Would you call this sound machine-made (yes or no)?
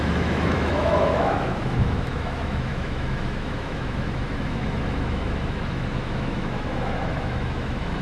yes